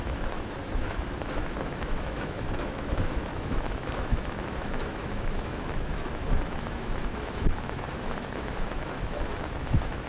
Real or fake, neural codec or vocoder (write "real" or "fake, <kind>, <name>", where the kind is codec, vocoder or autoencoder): fake, autoencoder, DAC-VAE